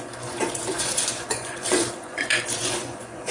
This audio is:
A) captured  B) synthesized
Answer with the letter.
B